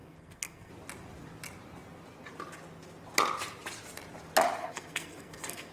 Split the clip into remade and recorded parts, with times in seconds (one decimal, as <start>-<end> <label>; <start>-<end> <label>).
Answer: 0.0-0.7 remade; 0.7-4.6 recorded; 4.6-5.7 remade